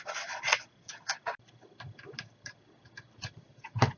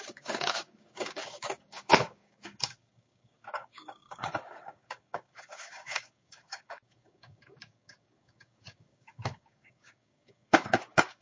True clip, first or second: first